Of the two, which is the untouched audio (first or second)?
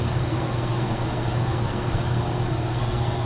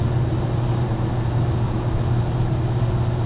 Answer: second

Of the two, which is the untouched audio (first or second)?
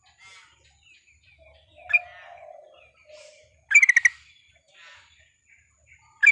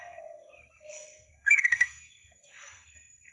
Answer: first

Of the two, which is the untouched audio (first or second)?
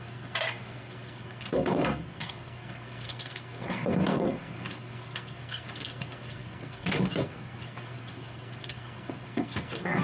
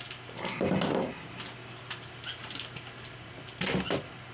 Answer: second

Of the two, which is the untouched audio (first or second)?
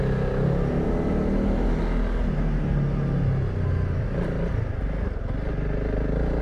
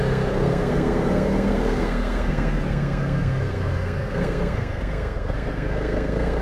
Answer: first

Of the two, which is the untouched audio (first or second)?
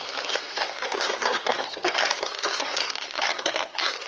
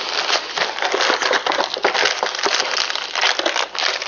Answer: second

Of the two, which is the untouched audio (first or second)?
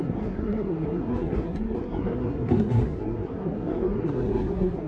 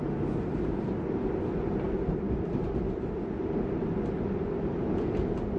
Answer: second